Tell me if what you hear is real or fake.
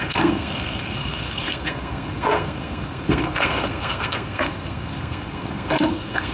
fake